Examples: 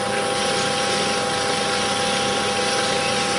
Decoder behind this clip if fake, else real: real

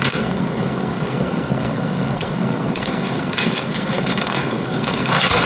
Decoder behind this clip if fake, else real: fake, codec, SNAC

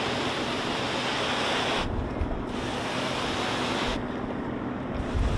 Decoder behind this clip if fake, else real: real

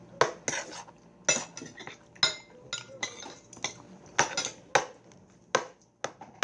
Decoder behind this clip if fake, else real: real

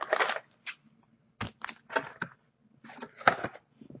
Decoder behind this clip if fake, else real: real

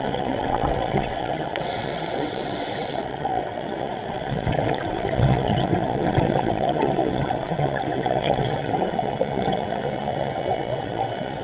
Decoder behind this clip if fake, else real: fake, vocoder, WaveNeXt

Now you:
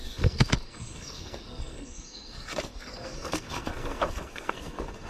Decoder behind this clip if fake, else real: fake, codec, SNAC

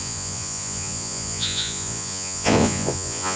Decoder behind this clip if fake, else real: fake, vocoder, Vocos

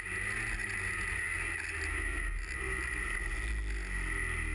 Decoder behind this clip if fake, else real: real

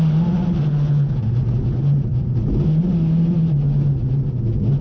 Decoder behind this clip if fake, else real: real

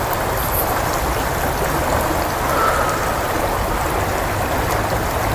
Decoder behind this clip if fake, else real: real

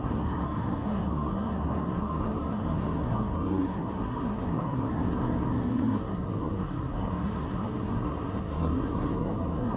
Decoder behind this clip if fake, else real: fake, codec, SNAC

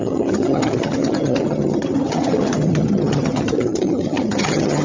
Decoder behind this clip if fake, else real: fake, vocoder, HiFi-GAN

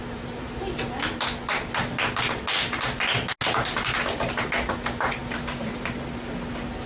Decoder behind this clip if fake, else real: real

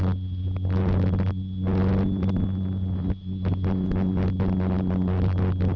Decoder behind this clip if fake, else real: real